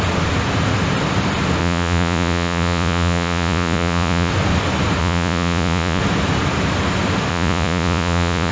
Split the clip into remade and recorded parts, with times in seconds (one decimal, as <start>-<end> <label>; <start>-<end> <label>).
0.0-1.6 recorded; 1.6-4.3 remade; 4.3-5.0 recorded; 5.0-6.0 remade; 6.0-7.3 recorded; 7.3-8.5 remade